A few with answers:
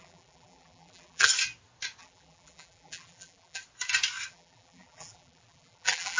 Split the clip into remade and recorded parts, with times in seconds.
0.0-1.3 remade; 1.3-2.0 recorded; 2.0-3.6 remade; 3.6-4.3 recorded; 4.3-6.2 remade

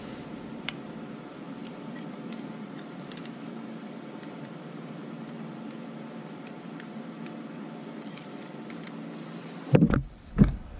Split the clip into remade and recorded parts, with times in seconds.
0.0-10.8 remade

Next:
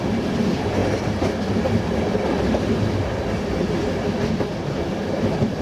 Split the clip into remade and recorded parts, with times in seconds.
0.0-5.6 recorded

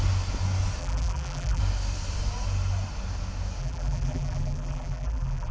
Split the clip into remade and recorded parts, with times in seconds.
0.0-0.8 recorded; 0.8-1.6 remade; 1.6-3.6 recorded; 3.6-5.5 remade

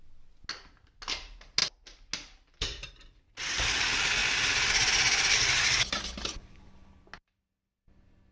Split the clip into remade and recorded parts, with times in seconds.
0.0-8.3 recorded

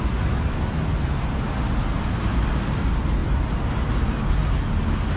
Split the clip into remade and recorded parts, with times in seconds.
0.0-5.2 recorded

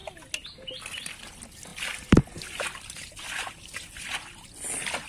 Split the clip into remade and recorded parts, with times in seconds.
0.0-5.1 recorded

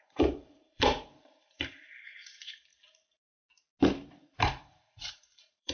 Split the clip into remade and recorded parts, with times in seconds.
0.0-2.7 remade; 2.7-4.3 recorded; 4.3-5.7 remade